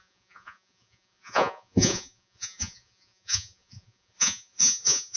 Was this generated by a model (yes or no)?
yes